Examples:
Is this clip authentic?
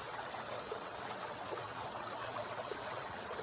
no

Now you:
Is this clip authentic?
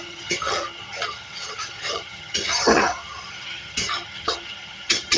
no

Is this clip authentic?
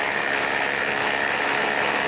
no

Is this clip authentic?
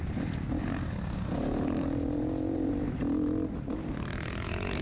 yes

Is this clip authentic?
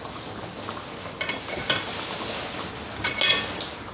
yes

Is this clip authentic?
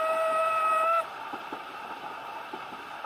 yes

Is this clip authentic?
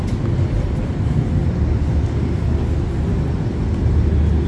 yes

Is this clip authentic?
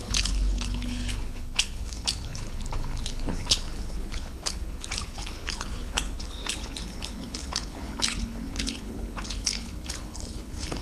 no